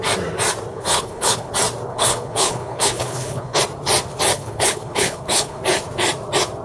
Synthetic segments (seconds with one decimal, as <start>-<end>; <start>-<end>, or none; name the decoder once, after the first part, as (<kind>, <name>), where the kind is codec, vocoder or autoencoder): 0.7-1.5 (codec, HILCodec); 1.9-3.6; 4.3-5.6